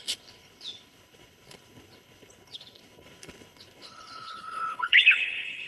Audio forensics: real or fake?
fake